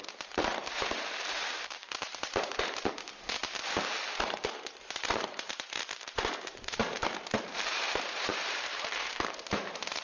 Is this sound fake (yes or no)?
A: yes